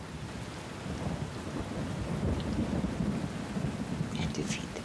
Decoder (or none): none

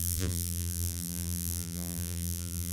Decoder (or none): vocoder, BigVGAN v2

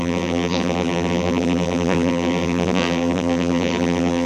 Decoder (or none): vocoder, BigVGAN v2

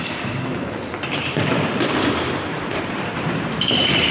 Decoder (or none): vocoder, BigVGAN v2